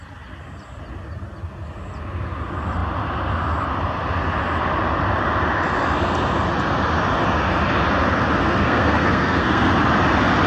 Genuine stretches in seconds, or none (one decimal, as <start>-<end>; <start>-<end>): 0.0-8.4; 9.7-10.5